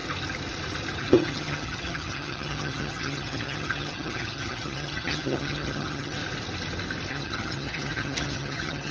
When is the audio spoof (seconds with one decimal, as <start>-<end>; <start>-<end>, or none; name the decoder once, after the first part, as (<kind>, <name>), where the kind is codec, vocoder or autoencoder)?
1.0-6.2 (vocoder, HiFi-GAN); 7.1-8.9

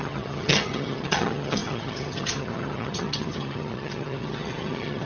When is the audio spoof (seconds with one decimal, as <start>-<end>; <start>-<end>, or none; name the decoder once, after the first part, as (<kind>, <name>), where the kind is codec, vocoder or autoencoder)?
0.0-5.1 (vocoder, HiFi-GAN)